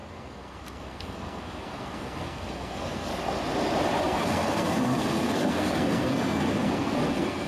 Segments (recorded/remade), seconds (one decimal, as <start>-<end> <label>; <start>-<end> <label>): 0.0-3.1 remade; 3.1-4.0 recorded; 4.0-7.5 remade